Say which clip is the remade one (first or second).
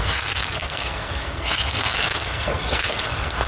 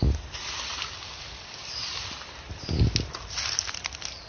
first